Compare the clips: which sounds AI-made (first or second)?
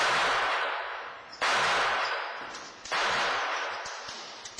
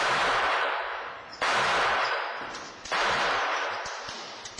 second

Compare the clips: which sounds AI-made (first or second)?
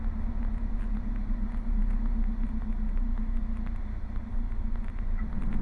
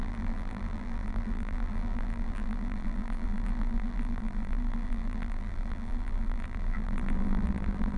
second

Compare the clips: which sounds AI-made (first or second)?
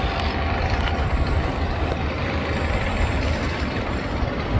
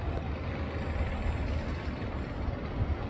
first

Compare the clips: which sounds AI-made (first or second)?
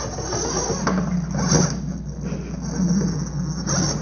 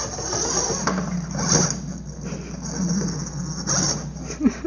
second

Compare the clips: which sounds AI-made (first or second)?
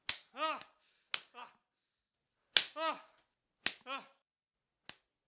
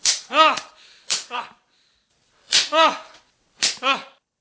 second